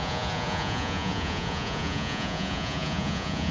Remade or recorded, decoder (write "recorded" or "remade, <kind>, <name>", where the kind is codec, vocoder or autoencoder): remade, vocoder, Vocos